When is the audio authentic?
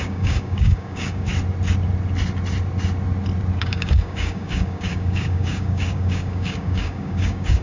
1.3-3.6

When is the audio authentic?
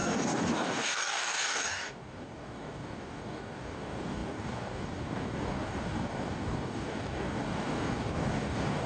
none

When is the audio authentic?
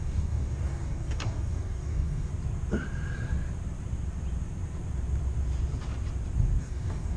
2.3-6.6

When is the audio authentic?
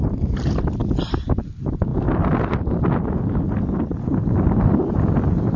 0.0-5.6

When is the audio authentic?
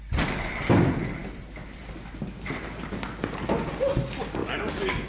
0.0-4.4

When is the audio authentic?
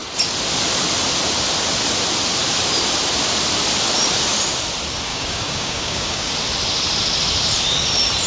0.0-5.1; 6.3-8.3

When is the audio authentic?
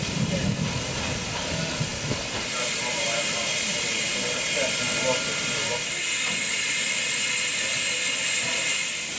0.0-9.2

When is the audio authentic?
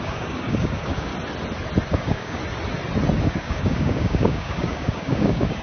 1.1-1.9; 2.4-3.2